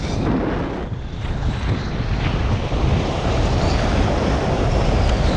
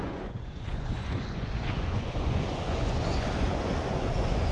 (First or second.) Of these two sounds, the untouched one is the first